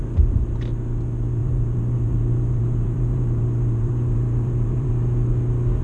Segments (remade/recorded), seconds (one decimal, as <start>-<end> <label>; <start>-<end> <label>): 0.0-1.4 recorded; 1.4-4.9 remade; 4.9-5.8 recorded